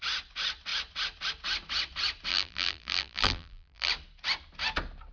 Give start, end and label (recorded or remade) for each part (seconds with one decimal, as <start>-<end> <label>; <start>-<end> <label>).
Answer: 0.0-2.3 recorded; 2.3-3.9 remade; 3.9-5.1 recorded